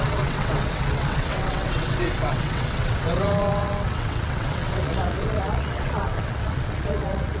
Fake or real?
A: fake